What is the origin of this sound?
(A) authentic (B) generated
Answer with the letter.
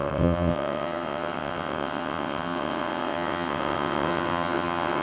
B